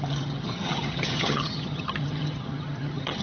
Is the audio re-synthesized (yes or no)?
yes